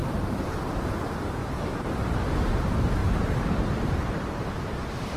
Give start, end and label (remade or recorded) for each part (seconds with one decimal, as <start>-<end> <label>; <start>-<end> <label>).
0.0-0.9 remade; 0.9-1.4 recorded; 1.4-2.1 remade; 2.1-3.0 recorded; 3.0-3.7 remade; 3.7-5.2 recorded